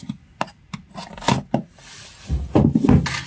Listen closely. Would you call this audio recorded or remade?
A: recorded